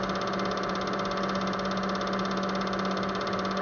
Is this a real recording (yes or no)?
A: yes